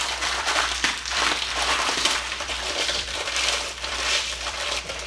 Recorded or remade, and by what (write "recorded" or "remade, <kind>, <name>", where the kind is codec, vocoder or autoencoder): remade, vocoder, BigVGAN v2